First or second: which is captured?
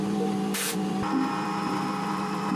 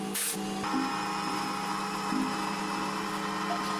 second